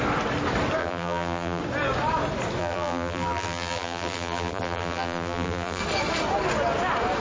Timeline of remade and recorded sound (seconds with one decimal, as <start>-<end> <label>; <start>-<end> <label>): 0.0-0.8 recorded; 0.8-1.6 remade; 1.6-2.6 recorded; 2.6-5.8 remade; 5.8-7.2 recorded